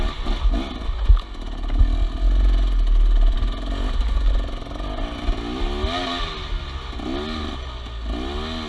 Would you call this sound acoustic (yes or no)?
yes